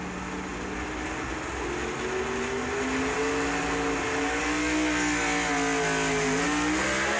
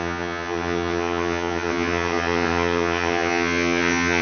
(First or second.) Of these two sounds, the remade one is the second